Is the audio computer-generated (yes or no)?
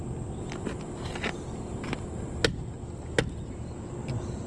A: no